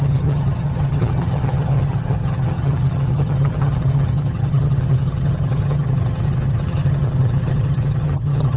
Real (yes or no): no